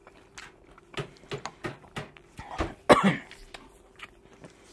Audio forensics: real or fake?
real